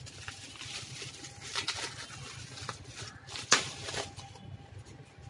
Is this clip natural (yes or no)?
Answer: yes